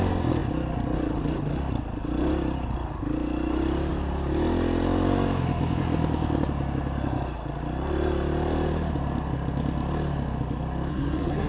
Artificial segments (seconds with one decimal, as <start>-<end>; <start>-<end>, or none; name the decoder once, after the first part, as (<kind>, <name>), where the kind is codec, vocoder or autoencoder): 10.9-11.5 (codec, SNAC)